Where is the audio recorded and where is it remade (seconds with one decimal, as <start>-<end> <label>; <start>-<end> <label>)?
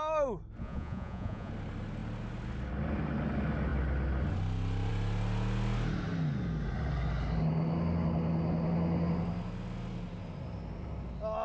0.0-0.6 recorded; 0.6-1.5 remade; 1.5-11.4 recorded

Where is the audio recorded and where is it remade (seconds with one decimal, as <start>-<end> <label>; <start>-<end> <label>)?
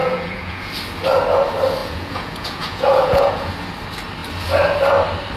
0.0-0.7 remade; 0.7-1.8 recorded; 1.8-3.5 remade; 3.5-5.4 recorded